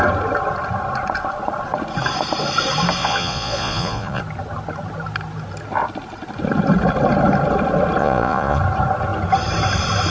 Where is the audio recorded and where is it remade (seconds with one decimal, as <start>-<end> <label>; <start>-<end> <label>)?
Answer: 0.0-3.0 recorded; 3.0-4.2 remade; 4.2-8.0 recorded; 8.0-8.6 remade; 8.6-10.1 recorded